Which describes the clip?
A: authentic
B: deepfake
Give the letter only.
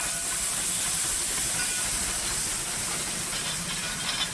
A